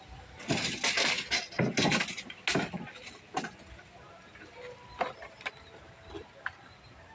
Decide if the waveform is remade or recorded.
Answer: recorded